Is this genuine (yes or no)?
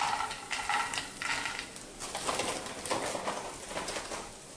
yes